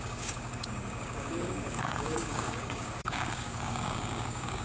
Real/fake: fake